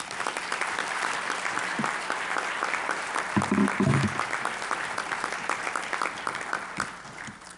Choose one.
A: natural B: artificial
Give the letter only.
A